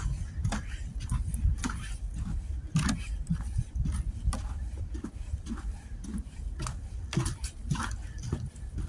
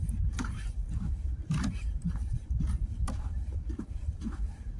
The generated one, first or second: second